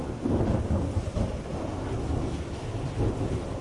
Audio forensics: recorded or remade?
recorded